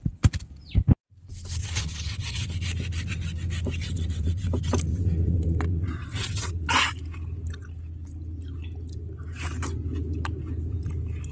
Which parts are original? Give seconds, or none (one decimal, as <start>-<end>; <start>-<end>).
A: 0.0-1.6; 2.5-3.8; 4.5-4.9; 6.8-11.3